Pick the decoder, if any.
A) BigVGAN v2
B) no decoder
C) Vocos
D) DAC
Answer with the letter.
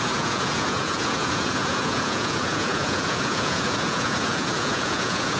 C